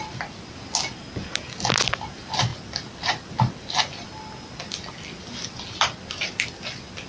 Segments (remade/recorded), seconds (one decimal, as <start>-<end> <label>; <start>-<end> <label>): 0.0-7.1 recorded

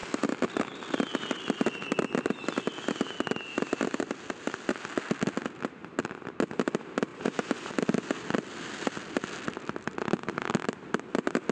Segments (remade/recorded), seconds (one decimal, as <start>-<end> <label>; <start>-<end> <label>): 0.0-7.1 recorded; 7.1-7.7 remade; 7.7-11.5 recorded

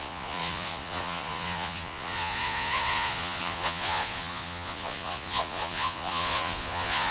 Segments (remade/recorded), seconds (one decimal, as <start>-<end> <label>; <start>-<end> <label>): 0.0-7.1 remade